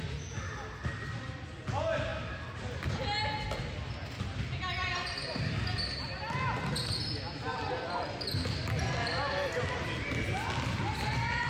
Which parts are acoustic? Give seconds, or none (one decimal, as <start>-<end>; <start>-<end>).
0.0-11.5